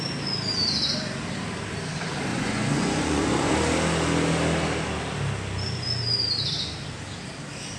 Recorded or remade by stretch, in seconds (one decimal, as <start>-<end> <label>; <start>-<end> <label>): 0.0-2.3 recorded; 2.3-3.5 remade; 3.5-7.8 recorded